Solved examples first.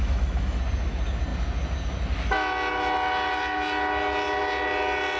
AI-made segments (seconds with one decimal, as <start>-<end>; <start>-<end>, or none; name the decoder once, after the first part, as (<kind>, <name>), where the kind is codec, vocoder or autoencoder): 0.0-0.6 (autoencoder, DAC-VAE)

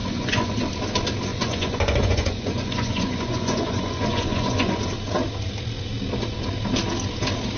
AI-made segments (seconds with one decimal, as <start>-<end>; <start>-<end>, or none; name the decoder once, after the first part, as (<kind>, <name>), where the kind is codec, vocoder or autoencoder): 0.0-0.5 (vocoder, Vocos); 1.3-4.8

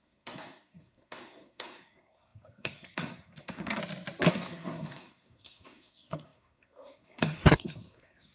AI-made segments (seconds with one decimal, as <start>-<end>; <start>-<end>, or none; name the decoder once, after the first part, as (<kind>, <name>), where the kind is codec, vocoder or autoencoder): 0.0-3.8 (codec, SNAC); 4.3-8.3

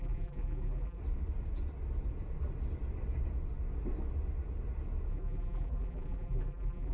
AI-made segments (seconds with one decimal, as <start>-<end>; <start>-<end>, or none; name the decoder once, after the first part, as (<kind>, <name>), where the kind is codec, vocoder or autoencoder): 0.0-1.0 (vocoder, BigVGAN v2); 5.1-6.9

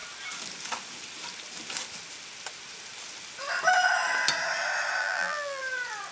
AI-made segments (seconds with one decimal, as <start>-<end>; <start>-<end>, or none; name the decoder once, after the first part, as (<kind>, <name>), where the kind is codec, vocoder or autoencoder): 5.0-5.6 (vocoder, BigVGAN v2)

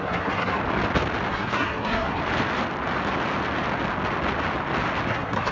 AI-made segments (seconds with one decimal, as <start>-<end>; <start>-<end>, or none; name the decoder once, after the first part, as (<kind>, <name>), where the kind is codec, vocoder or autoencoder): 0.0-0.6 (codec, SNAC); 1.3-2.2; 5.1-5.5

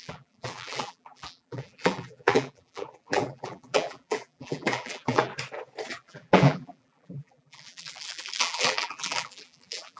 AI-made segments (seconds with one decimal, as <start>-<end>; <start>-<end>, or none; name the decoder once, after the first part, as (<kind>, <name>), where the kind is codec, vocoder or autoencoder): 0.0-5.3 (vocoder, BigVGAN v2); 5.9-10.0